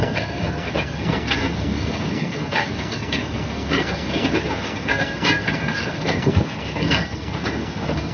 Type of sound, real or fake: fake